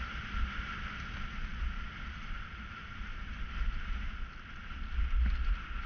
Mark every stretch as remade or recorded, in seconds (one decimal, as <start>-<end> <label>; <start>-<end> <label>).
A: 0.0-1.5 recorded; 1.5-5.0 remade; 5.0-5.9 recorded